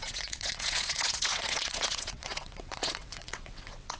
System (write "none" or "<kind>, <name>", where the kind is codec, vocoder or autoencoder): vocoder, WaveNeXt